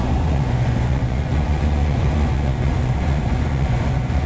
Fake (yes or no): yes